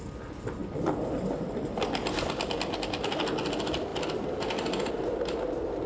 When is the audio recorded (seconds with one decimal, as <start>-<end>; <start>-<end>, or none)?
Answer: 0.0-5.9